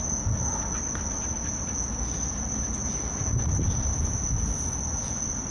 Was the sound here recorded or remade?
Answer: recorded